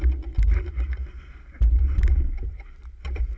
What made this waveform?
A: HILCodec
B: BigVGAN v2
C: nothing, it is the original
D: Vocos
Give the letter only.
B